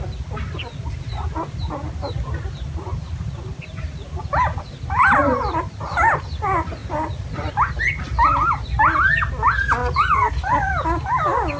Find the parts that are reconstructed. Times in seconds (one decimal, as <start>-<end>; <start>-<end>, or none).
none